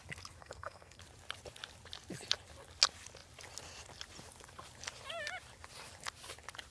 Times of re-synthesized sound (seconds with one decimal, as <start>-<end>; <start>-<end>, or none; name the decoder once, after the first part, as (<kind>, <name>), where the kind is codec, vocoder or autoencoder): 0.4-1.0 (codec, SNAC)